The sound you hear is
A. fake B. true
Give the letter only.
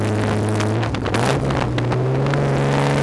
B